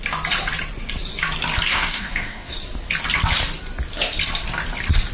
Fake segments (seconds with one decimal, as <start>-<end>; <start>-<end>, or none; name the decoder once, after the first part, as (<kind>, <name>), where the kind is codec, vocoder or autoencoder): 1.7-2.5 (codec, DAC)